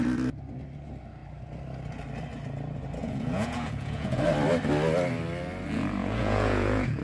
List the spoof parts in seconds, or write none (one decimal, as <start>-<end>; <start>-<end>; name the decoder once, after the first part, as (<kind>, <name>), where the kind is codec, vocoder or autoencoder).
3.0-4.2 (vocoder, Vocos); 6.0-7.0